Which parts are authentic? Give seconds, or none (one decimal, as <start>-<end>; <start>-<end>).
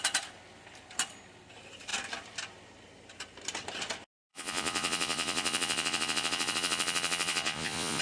0.0-4.3